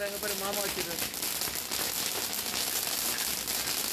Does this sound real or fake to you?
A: real